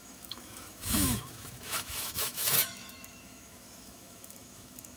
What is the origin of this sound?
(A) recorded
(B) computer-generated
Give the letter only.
B